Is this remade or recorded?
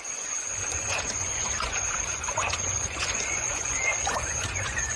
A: remade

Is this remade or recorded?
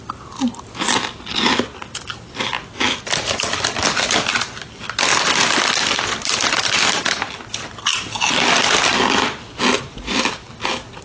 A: recorded